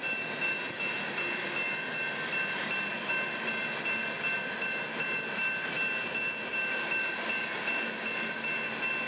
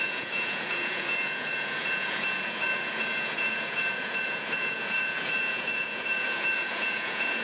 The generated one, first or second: second